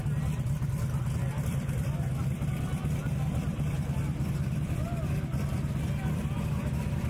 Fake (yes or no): no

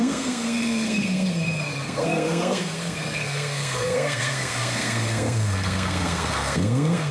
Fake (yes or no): yes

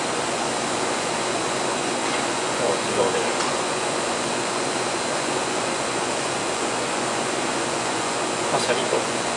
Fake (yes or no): yes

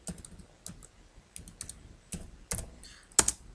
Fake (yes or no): no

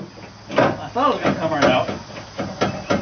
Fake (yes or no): no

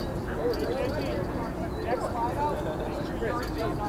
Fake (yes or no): no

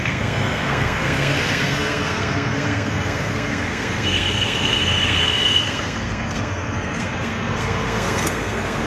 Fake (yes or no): yes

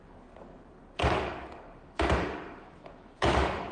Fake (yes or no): yes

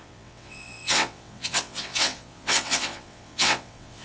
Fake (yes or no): yes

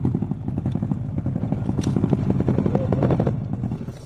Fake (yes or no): yes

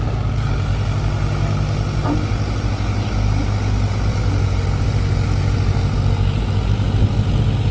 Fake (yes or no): no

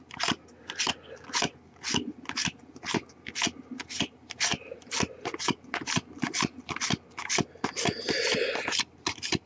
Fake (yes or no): no